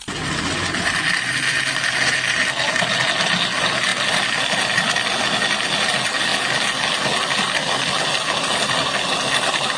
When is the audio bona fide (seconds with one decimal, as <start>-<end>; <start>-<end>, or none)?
0.0-9.8